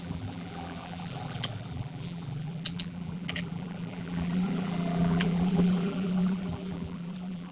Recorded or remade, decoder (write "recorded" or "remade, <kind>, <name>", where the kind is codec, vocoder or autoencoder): remade, vocoder, BigVGAN v2